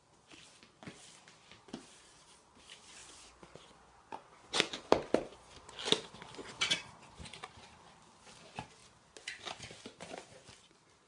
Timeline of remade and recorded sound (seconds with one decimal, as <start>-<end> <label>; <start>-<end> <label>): 0.0-3.0 recorded; 3.0-4.9 remade; 4.9-11.1 recorded